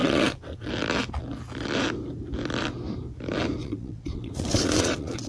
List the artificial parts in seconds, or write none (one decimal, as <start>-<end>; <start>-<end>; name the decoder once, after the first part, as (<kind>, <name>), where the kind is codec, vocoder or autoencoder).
0.0-0.7 (vocoder, WaveNeXt); 3.6-5.3